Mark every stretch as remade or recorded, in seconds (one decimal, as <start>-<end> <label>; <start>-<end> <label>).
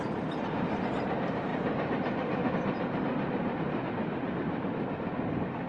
0.0-5.7 remade